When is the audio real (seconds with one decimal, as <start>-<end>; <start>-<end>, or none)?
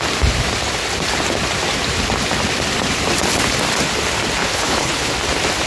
0.0-4.4; 5.1-5.7